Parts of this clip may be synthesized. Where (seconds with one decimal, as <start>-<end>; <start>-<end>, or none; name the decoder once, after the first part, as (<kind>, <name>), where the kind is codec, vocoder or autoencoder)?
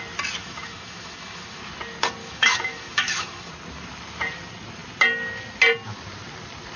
0.4-1.6 (autoencoder, DAC-VAE); 2.2-3.5